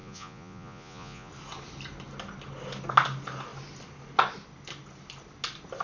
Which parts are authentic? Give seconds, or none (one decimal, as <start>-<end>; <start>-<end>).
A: 1.3-5.8

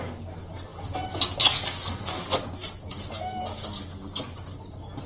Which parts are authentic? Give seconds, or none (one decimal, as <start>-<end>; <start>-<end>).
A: 0.0-5.1

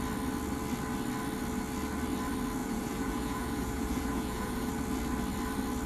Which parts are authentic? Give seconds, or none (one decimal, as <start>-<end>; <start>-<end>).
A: 0.0-2.6; 4.7-5.9

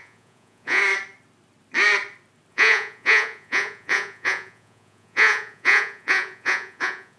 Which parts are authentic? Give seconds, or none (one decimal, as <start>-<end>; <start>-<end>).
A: 0.8-2.5